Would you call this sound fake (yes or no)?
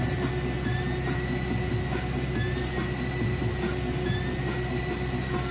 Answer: no